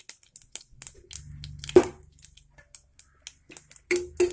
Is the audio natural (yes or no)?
yes